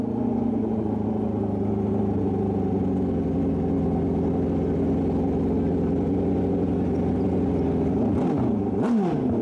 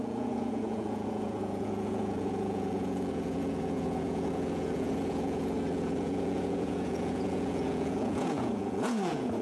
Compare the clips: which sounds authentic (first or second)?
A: first